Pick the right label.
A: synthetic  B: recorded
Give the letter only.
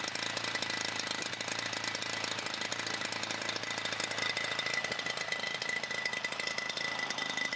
B